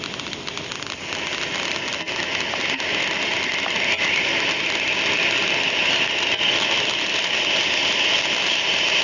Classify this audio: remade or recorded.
recorded